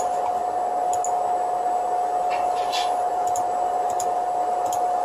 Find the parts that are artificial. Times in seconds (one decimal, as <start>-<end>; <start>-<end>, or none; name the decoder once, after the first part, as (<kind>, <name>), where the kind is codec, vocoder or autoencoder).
0.0-0.4 (vocoder, BigVGAN v2); 3.1-5.0